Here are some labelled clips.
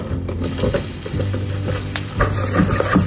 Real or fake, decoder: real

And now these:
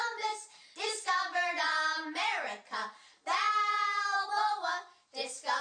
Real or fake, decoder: real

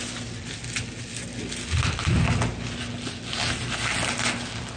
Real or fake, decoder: real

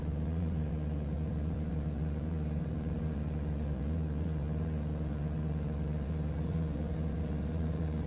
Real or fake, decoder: fake, vocoder, Vocos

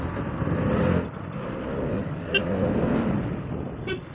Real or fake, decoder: real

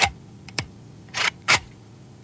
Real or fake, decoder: fake, vocoder, Vocos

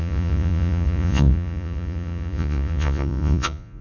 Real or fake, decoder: fake, vocoder, Vocos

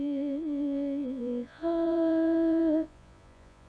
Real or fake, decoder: fake, vocoder, Vocos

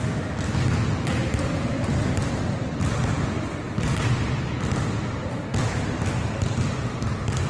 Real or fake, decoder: real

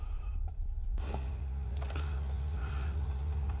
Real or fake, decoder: fake, vocoder, Vocos